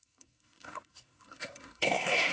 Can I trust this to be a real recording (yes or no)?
no